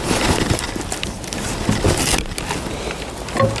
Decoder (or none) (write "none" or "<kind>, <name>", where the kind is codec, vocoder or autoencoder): none